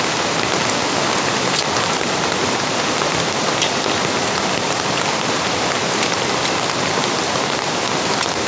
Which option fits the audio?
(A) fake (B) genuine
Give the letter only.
B